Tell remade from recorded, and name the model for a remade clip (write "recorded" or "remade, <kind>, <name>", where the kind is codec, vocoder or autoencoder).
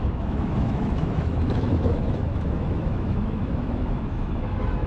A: remade, autoencoder, DAC-VAE